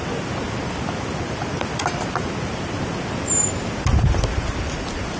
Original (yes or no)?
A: yes